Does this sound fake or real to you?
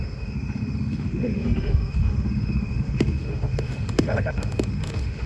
fake